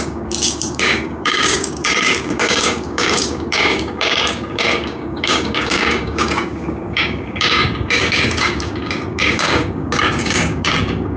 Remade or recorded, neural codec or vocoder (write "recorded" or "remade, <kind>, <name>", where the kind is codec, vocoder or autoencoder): remade, codec, DAC